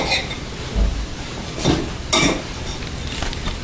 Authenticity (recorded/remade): recorded